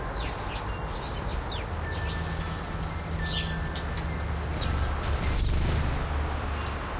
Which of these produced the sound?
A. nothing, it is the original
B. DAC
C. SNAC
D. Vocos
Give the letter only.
A